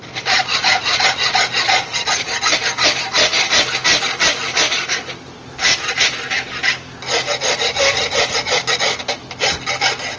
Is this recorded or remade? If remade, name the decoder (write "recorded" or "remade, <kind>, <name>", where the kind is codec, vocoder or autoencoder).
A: recorded